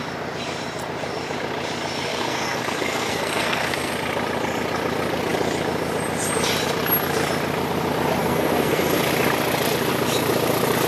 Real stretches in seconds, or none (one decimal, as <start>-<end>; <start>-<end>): 0.0-2.1; 3.9-8.2; 9.0-10.9